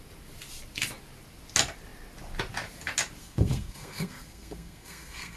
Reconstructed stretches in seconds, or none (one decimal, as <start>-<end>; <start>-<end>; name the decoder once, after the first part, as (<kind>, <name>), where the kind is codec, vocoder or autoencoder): 3.2-5.4 (codec, SNAC)

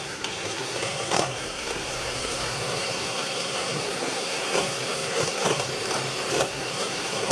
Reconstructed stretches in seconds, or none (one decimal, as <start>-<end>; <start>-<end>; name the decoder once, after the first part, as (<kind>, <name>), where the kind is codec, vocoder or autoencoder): 0.0-5.7 (codec, SNAC); 6.3-7.3

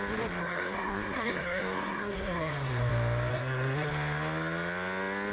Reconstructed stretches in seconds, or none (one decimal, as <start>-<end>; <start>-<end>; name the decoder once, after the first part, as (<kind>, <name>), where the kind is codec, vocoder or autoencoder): 0.4-2.9 (codec, SNAC); 3.3-3.9